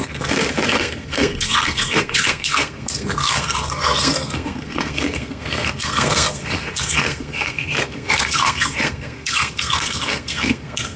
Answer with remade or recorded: remade